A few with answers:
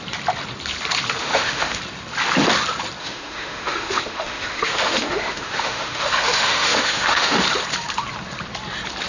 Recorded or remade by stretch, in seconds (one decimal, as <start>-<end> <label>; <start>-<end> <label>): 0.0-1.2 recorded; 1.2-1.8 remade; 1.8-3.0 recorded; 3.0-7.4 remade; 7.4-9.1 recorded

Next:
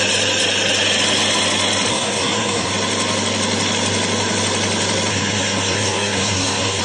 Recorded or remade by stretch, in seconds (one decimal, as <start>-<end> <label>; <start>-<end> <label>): 0.0-1.9 recorded; 1.9-2.7 remade; 2.7-5.1 recorded; 5.1-6.8 remade

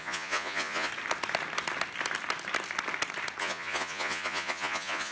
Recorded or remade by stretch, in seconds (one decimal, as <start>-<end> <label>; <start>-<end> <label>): 0.0-0.9 remade; 0.9-3.4 recorded; 3.4-5.1 remade